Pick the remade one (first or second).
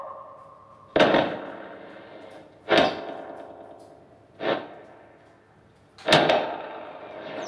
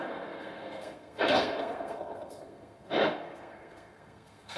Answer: second